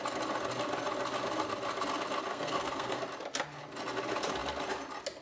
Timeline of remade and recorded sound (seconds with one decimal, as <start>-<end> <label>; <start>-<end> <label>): 0.0-2.3 recorded; 2.3-3.0 remade; 3.0-5.2 recorded